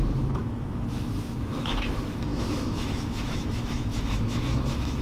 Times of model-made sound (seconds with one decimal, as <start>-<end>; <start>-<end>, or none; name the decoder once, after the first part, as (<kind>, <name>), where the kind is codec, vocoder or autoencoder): 0.0-5.0 (autoencoder, DAC-VAE)